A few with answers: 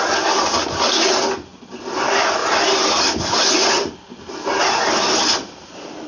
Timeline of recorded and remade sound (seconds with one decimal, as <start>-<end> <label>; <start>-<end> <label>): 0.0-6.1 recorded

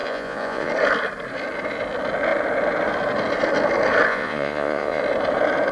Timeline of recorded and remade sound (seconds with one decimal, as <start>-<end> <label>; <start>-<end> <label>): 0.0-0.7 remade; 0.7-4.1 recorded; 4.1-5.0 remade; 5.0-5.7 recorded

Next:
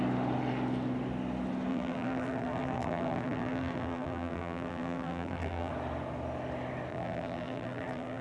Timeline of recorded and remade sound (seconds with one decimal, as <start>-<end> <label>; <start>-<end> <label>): 0.0-1.7 recorded; 1.7-5.7 remade; 5.7-6.9 recorded; 6.9-8.2 remade

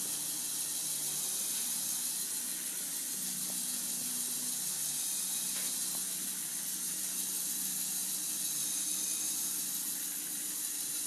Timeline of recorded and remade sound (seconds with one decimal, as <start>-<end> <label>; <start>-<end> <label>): 0.0-11.1 recorded

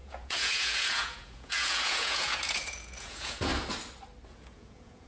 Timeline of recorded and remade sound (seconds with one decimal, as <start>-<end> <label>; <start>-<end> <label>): 0.0-3.5 remade; 3.5-4.3 recorded; 4.3-5.1 remade

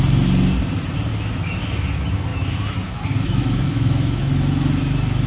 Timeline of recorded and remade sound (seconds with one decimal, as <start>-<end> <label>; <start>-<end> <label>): 0.0-1.1 recorded; 1.1-1.7 remade; 1.7-2.3 recorded; 2.3-4.3 remade; 4.3-5.3 recorded

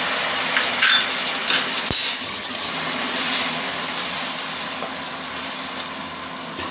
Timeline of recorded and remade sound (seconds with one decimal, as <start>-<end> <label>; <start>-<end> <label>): 0.0-2.2 recorded; 2.2-2.7 remade; 2.7-6.7 recorded

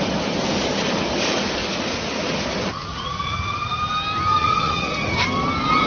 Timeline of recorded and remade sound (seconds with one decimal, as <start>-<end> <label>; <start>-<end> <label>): 0.0-1.6 recorded; 1.6-2.4 remade; 2.4-2.9 recorded; 2.9-3.8 remade; 3.8-4.4 recorded; 4.4-5.2 remade; 5.2-5.9 recorded